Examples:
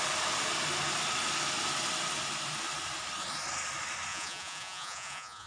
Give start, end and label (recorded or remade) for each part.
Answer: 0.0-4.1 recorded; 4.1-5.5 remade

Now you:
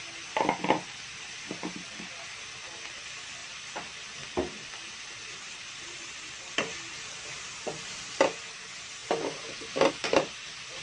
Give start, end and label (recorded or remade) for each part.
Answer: 0.0-10.8 recorded